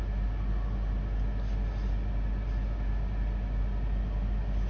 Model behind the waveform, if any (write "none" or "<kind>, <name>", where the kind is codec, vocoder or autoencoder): none